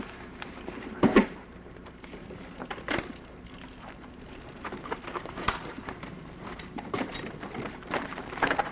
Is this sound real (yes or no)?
no